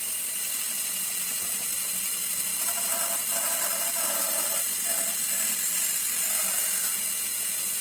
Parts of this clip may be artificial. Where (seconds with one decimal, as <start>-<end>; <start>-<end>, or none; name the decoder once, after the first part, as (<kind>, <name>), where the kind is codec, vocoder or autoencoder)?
6.6-7.8 (vocoder, Vocos)